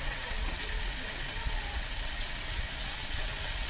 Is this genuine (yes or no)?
no